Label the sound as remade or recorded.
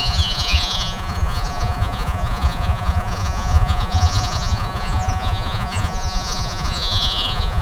remade